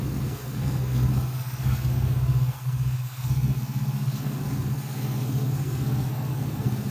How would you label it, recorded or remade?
remade